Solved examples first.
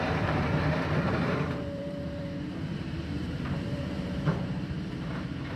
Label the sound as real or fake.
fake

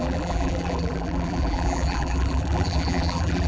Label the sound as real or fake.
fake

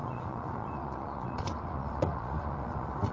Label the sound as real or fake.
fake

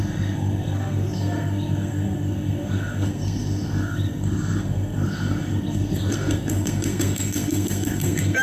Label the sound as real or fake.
fake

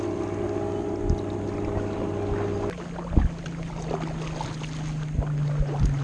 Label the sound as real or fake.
real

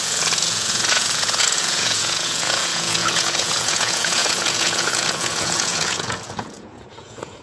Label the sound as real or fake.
fake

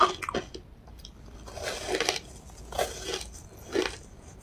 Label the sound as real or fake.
real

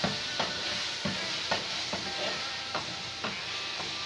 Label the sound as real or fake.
real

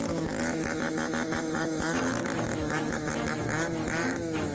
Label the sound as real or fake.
fake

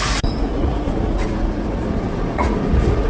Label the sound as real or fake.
fake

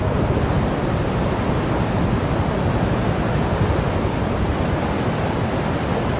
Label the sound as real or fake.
real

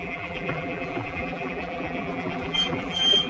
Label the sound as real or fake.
fake